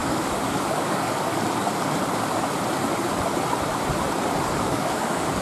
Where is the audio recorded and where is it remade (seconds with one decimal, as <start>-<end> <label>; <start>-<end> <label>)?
0.0-1.3 remade; 1.3-4.5 recorded; 4.5-5.4 remade